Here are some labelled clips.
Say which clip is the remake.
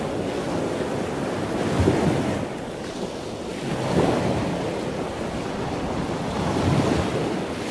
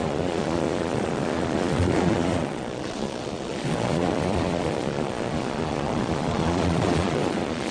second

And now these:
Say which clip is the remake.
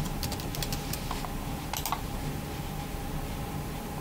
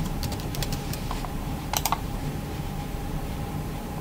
second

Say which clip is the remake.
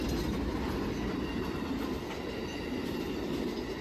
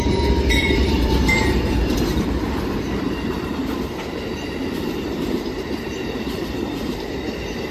second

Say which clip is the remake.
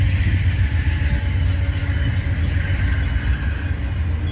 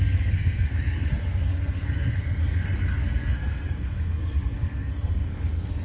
second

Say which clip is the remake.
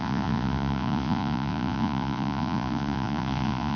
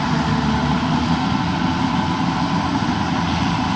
first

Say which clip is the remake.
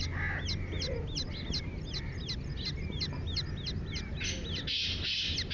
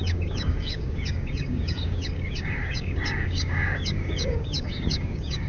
second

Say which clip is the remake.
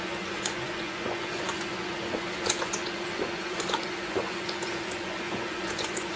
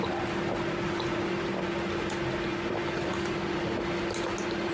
first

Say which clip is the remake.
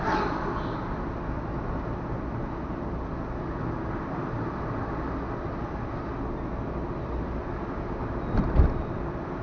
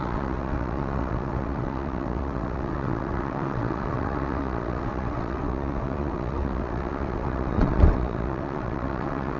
second